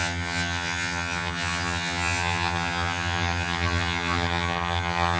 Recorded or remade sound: remade